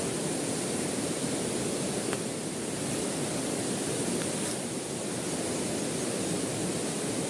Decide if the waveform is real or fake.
real